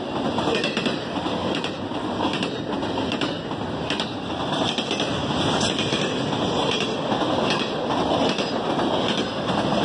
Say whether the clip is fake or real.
real